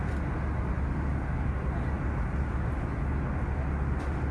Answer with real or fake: real